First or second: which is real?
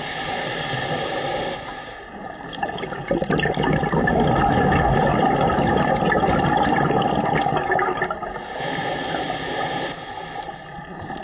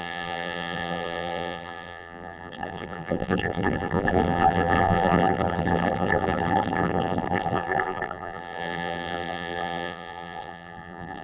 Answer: first